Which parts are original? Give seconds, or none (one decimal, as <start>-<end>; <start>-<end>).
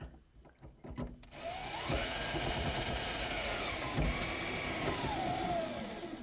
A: 0.0-1.6; 3.7-6.2